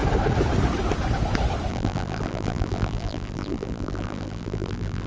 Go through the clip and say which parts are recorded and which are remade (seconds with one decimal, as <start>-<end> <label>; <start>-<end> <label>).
0.0-1.7 recorded; 1.7-5.1 remade